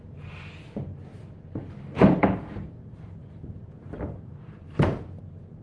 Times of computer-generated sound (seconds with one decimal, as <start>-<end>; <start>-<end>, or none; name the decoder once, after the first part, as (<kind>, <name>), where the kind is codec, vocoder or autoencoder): 1.6-5.0 (vocoder, BigVGAN v2)